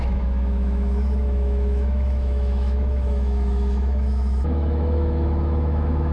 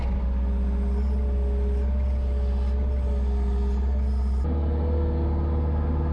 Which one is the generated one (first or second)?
first